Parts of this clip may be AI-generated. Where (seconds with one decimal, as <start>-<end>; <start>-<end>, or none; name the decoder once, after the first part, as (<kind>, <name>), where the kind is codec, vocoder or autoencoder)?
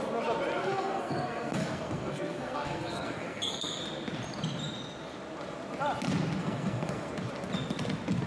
0.6-3.8 (codec, SNAC); 6.4-7.1